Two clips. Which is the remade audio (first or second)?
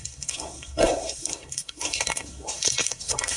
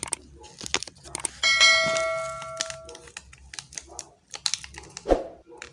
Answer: first